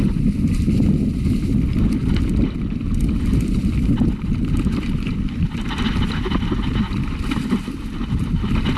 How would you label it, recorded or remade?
recorded